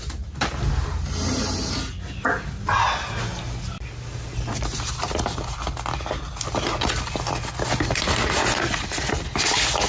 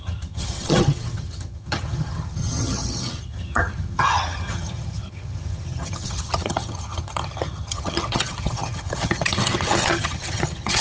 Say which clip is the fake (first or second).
second